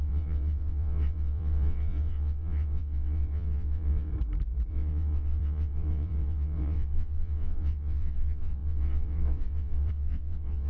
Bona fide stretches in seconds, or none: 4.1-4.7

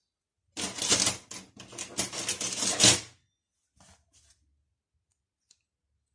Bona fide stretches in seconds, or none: 0.0-6.1

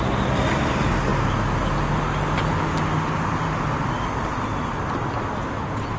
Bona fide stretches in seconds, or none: 0.0-6.0

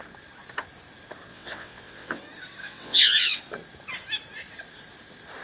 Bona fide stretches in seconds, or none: 0.0-1.3; 2.2-2.6; 3.4-5.4

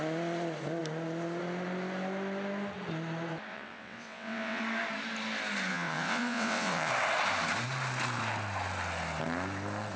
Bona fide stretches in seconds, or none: 0.0-3.5; 4.6-5.7; 6.9-10.0

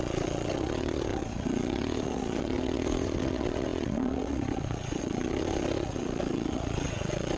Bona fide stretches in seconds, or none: none

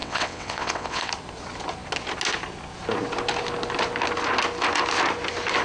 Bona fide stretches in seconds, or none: 1.1-5.6